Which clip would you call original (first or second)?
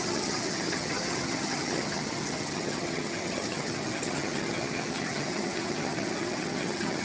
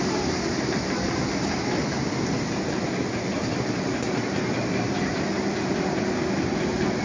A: second